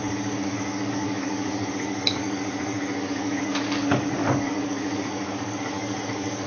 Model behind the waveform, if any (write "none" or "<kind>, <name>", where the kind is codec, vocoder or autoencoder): codec, DAC